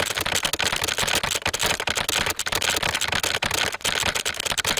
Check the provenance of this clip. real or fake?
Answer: real